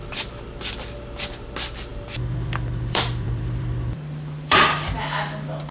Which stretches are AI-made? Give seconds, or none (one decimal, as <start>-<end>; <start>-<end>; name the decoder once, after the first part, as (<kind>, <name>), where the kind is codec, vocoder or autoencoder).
1.9-5.0 (vocoder, BigVGAN v2)